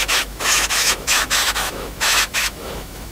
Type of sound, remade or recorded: remade